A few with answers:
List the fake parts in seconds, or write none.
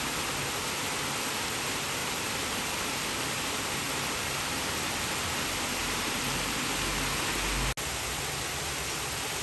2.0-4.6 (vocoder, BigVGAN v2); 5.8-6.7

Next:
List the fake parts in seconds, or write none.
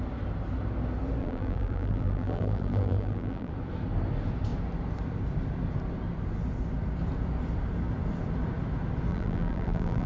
1.2-3.5 (vocoder, BigVGAN v2); 9.1-10.1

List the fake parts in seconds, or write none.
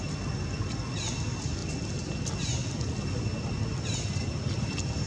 none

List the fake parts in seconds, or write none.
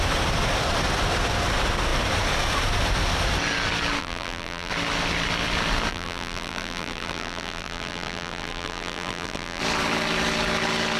4.0-4.7 (vocoder, BigVGAN v2); 5.9-9.6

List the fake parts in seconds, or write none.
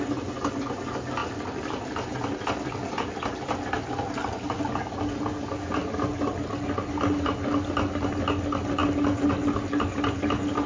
1.2-3.9 (vocoder, BigVGAN v2)